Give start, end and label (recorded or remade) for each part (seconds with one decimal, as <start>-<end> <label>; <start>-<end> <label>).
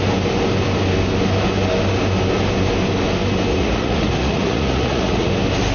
0.0-3.5 recorded; 3.5-5.3 remade; 5.3-5.7 recorded